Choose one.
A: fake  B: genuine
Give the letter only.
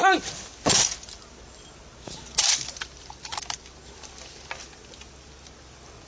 B